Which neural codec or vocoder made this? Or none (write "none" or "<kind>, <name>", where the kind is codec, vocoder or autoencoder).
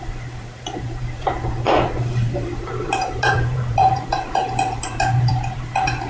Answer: vocoder, BigVGAN v2